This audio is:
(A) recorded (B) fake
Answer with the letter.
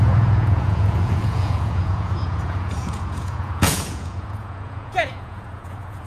B